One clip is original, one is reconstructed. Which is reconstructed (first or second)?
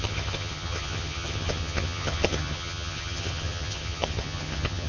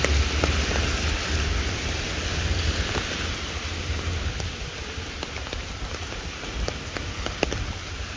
first